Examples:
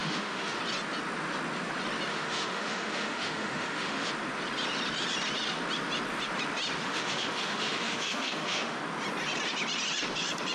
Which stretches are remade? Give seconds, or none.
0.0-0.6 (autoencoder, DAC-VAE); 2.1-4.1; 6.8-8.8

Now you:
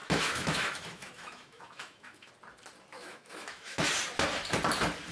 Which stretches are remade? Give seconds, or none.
0.0-2.3 (autoencoder, DAC-VAE); 2.9-3.9

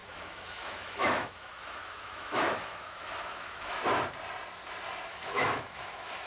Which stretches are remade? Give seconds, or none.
0.0-3.8 (autoencoder, DAC-VAE); 5.1-6.3

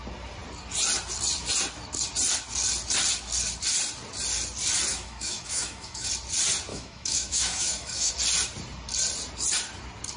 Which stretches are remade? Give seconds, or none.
4.9-6.1 (autoencoder, DAC-VAE); 6.7-8.1